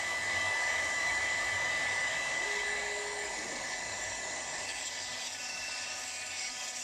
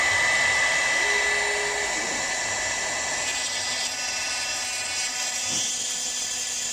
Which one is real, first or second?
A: second